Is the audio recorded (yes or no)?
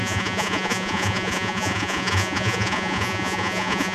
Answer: no